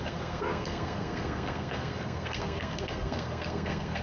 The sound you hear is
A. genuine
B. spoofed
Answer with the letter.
B